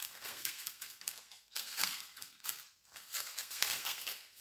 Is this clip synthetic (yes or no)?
yes